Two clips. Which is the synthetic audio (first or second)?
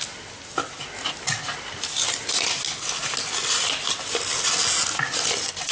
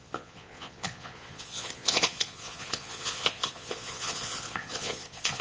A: second